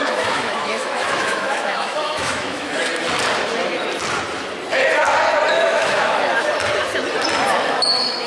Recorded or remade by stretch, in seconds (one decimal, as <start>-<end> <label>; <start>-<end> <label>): 0.0-2.9 remade; 2.9-5.5 recorded; 5.5-6.3 remade; 6.3-7.5 recorded; 7.5-8.3 remade